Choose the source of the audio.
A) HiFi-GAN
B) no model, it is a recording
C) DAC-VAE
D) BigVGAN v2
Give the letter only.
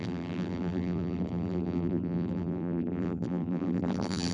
D